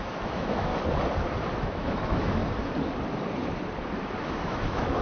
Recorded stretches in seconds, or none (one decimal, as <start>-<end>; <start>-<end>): 0.7-1.6; 2.4-4.1